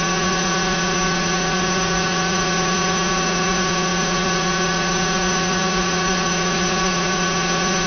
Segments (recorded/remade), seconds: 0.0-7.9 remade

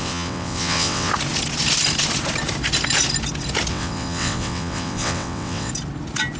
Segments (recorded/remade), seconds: 0.0-1.1 remade; 1.1-3.7 recorded; 3.7-5.7 remade; 5.7-6.4 recorded

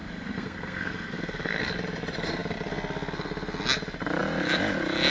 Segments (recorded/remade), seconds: 0.0-1.6 remade; 1.6-5.1 recorded

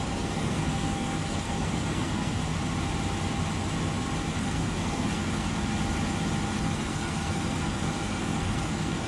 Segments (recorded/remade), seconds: 0.0-2.6 remade; 2.6-4.4 recorded; 4.4-5.7 remade; 5.7-6.6 recorded; 6.6-9.1 remade

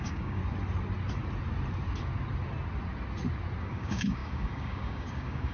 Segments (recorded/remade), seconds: 0.0-0.4 remade; 0.4-3.6 recorded; 3.6-5.5 remade

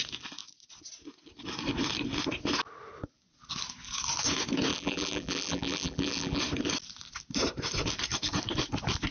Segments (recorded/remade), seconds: 0.0-4.7 recorded; 4.7-6.4 remade; 6.4-9.1 recorded